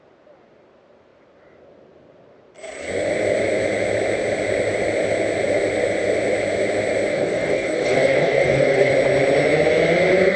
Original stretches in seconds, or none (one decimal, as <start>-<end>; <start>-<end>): 0.0-7.1; 8.9-10.4